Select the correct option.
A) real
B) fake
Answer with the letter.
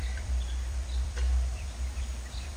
B